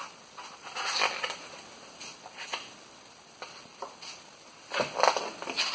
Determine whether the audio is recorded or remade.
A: recorded